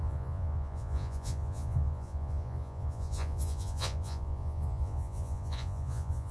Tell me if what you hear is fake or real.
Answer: fake